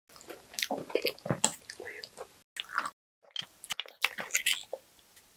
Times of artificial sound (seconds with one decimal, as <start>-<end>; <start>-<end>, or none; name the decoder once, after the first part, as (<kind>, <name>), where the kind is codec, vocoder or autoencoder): none